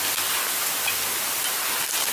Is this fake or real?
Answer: real